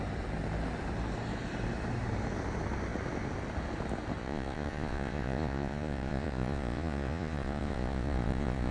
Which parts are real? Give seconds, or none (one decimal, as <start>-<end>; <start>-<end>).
0.0-4.2